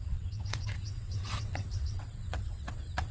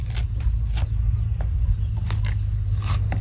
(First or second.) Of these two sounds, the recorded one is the second